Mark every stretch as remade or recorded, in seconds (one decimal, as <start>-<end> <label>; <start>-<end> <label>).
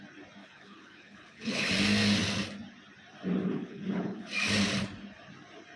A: 0.0-0.4 recorded; 0.4-1.7 remade; 1.7-3.4 recorded; 3.4-4.3 remade; 4.3-5.8 recorded